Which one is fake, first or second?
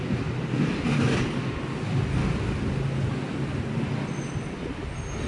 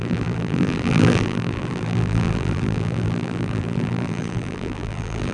second